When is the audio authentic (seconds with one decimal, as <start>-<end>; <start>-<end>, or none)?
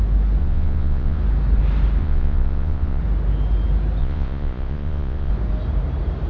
0.0-0.4; 1.2-2.0; 3.0-4.0; 5.3-6.3